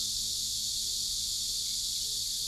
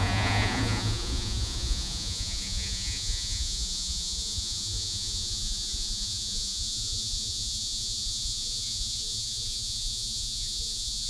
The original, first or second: first